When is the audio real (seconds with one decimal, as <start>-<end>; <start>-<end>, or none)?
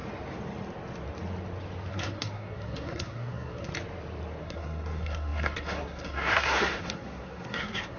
0.0-1.9; 3.7-4.4